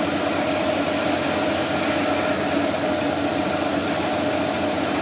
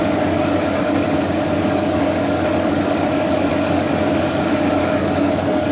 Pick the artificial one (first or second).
second